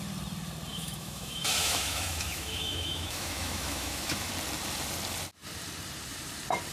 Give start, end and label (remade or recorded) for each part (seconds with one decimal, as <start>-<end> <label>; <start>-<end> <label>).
0.0-0.7 recorded; 0.7-4.3 remade; 4.3-6.7 recorded